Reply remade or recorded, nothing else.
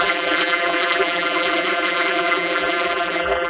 remade